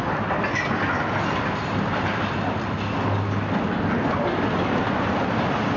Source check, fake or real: real